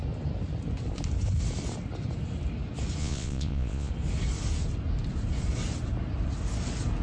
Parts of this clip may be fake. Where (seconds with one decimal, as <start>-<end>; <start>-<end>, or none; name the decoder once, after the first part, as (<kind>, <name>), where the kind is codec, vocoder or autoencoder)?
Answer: 3.0-3.9 (vocoder, Vocos)